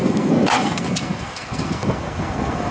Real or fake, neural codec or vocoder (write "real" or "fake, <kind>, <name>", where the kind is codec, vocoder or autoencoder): fake, codec, SNAC